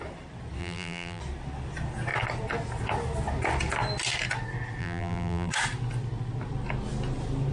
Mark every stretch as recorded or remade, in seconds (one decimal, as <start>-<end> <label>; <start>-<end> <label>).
0.0-0.6 recorded; 0.6-1.2 remade; 1.2-4.8 recorded; 4.8-5.5 remade; 5.5-7.5 recorded